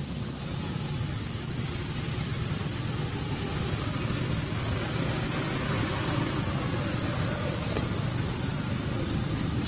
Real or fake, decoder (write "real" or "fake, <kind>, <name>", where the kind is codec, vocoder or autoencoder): real